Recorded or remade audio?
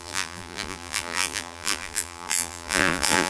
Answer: remade